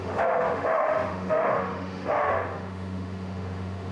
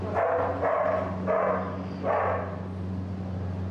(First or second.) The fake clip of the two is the first